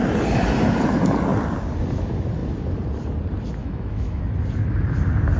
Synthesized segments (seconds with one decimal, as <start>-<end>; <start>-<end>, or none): 3.6-4.2